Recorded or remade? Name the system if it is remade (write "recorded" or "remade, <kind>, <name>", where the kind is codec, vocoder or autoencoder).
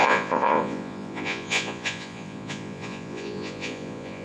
remade, vocoder, Vocos